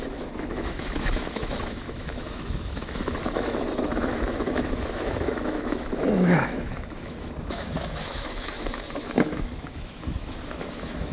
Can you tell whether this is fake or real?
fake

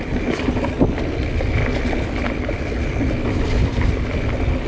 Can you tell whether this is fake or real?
real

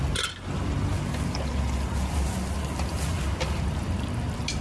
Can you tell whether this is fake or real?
real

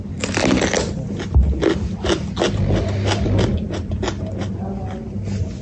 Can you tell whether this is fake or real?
real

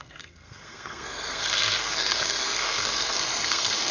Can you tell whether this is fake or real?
fake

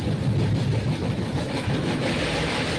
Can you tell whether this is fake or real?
real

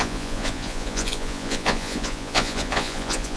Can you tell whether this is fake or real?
fake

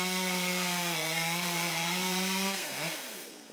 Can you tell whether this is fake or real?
fake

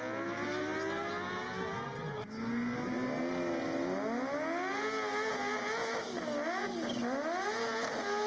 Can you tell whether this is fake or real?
real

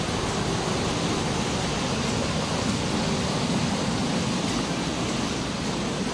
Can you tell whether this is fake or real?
real